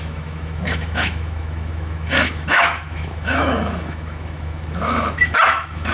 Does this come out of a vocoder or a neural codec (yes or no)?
yes